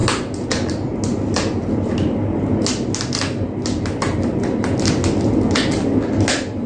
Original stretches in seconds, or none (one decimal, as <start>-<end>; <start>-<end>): 0.0-6.7